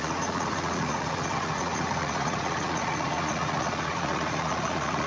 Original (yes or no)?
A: no